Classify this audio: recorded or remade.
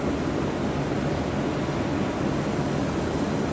recorded